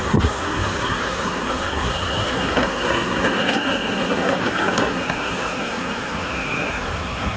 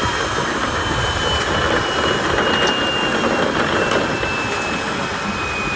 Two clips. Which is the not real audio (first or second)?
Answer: first